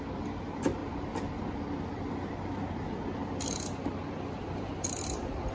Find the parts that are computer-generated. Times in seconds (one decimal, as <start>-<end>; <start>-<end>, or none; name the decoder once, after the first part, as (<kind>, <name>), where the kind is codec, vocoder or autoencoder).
none